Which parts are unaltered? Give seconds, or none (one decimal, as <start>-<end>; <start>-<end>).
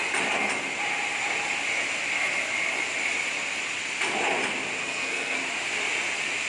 0.0-4.8; 5.4-6.5